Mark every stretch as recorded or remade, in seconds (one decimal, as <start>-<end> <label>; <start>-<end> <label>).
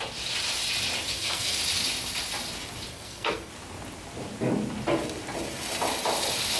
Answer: 0.0-1.1 recorded; 1.1-1.6 remade; 1.6-2.9 recorded; 2.9-3.5 remade; 3.5-6.6 recorded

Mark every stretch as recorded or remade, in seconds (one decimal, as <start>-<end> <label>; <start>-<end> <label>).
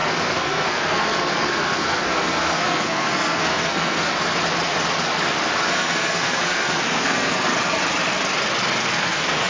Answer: 0.0-4.1 remade; 4.1-5.7 recorded; 5.7-7.5 remade; 7.5-8.9 recorded; 8.9-9.5 remade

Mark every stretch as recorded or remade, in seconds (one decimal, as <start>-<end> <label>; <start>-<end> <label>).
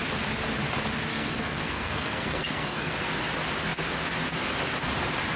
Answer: 0.0-1.1 recorded; 1.1-3.1 remade; 3.1-5.4 recorded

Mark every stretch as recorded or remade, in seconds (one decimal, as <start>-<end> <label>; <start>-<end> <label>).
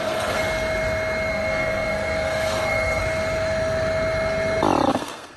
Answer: 0.0-0.4 remade; 0.4-1.3 recorded; 1.3-3.0 remade; 3.0-4.9 recorded; 4.9-5.4 remade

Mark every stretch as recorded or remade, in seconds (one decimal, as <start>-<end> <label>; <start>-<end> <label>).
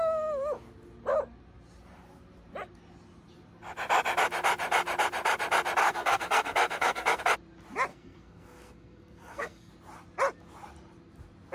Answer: 0.0-5.8 recorded; 5.8-7.2 remade; 7.2-7.9 recorded; 7.9-9.7 remade; 9.7-11.5 recorded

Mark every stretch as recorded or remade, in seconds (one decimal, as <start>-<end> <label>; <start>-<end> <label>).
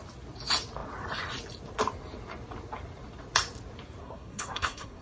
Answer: 0.0-4.0 recorded; 4.0-5.0 remade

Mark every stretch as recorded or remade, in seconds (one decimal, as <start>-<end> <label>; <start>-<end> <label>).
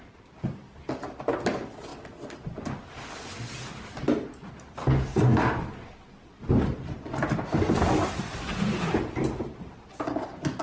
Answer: 0.0-10.6 recorded